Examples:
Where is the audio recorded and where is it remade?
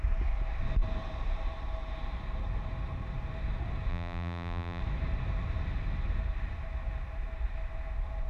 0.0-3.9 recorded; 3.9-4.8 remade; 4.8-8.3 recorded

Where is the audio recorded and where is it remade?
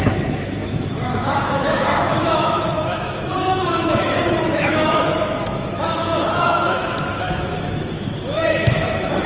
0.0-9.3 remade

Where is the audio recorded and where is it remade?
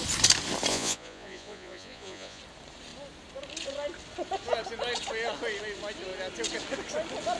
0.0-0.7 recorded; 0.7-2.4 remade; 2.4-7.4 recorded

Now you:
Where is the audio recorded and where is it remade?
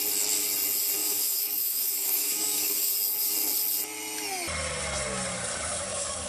0.0-1.0 recorded; 1.0-2.9 remade; 2.9-5.3 recorded; 5.3-6.3 remade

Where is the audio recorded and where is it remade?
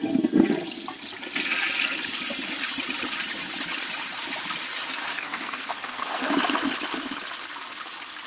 0.0-5.0 recorded; 5.0-6.3 remade; 6.3-8.3 recorded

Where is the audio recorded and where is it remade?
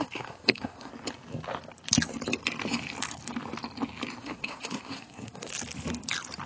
0.0-0.9 remade; 0.9-4.2 recorded; 4.2-5.5 remade; 5.5-6.5 recorded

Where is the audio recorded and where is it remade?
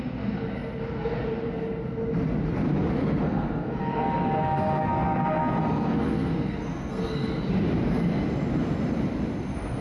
0.0-3.0 recorded; 3.0-7.4 remade; 7.4-9.8 recorded